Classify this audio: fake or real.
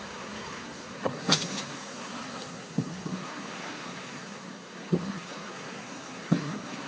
fake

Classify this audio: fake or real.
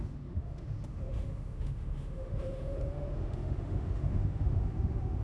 fake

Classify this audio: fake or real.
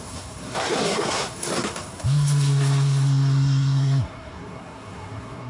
fake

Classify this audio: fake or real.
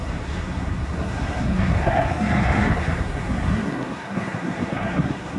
fake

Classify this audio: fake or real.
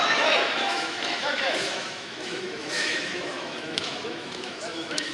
fake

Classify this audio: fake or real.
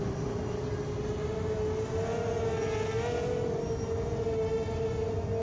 real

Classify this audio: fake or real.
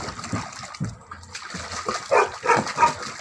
real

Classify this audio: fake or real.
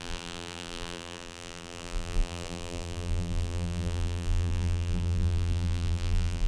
fake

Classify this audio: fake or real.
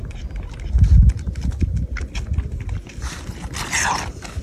real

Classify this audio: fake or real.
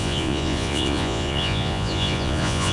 fake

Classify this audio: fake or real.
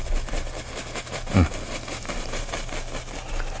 real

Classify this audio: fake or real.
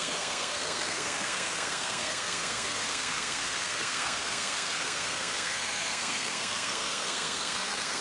fake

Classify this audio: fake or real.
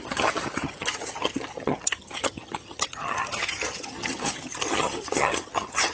fake